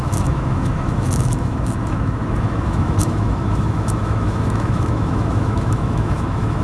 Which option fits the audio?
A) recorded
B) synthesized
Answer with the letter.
B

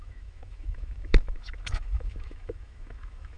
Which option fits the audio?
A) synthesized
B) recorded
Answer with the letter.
A